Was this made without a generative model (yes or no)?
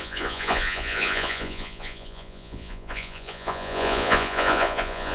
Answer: no